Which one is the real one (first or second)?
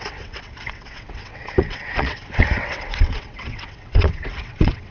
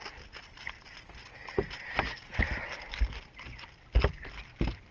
second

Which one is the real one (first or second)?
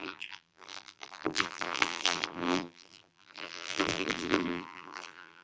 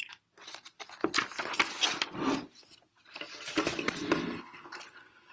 second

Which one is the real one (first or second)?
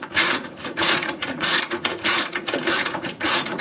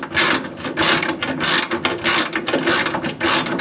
second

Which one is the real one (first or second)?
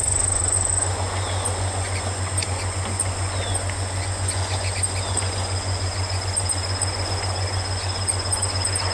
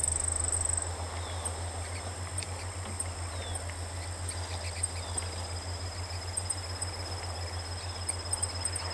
second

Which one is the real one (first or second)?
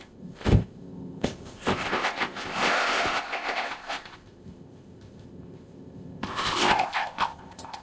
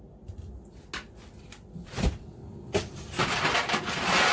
second